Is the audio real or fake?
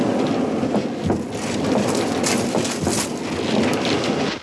real